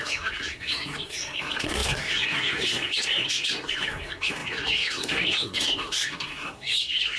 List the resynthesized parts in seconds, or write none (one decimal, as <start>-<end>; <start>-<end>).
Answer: 0.0-7.2